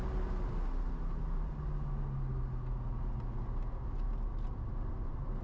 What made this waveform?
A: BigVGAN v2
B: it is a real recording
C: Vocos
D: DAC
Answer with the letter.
B